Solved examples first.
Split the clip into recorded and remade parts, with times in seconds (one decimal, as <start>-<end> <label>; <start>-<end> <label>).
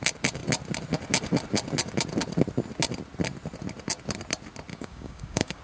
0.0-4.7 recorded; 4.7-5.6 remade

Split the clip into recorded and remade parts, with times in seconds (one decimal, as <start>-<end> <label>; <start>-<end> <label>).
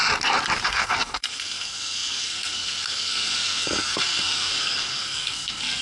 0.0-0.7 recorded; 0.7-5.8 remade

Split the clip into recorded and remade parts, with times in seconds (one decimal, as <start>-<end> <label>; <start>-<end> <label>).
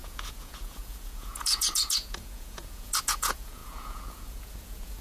0.0-5.0 remade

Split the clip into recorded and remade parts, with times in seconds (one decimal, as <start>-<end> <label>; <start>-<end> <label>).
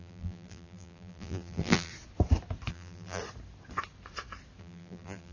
0.0-1.9 remade; 1.9-2.7 recorded; 2.7-3.2 remade; 3.2-4.6 recorded; 4.6-5.3 remade